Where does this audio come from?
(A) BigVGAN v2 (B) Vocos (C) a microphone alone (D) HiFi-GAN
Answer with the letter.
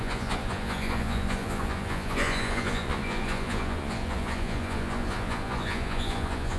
B